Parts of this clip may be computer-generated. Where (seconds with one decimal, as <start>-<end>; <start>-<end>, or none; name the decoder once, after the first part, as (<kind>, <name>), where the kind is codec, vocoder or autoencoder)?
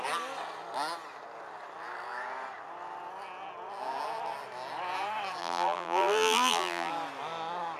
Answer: 5.4-6.9 (vocoder, BigVGAN v2)